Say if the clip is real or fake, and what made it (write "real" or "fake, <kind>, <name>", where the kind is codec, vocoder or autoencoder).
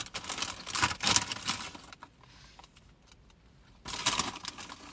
real